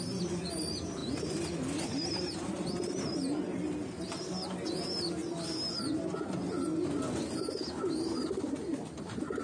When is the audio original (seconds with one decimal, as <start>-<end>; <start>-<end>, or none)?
0.0-9.4